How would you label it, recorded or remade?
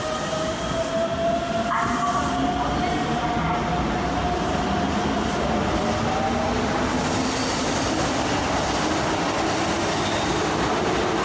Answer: recorded